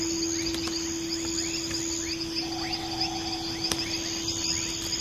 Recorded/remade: recorded